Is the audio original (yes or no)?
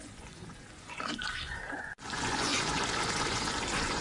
no